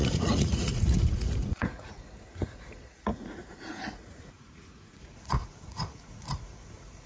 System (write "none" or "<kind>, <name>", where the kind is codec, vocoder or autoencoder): vocoder, Vocos